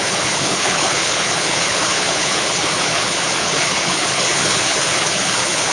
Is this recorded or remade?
remade